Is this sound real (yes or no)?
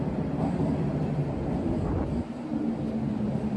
yes